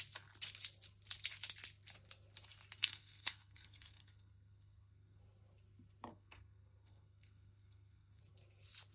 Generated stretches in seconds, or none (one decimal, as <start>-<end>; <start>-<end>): 2.8-5.2; 6.1-8.2